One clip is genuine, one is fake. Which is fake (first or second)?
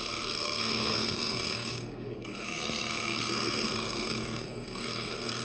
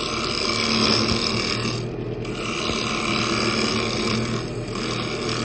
first